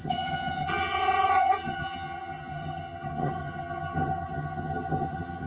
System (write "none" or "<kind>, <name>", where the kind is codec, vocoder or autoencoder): vocoder, HiFi-GAN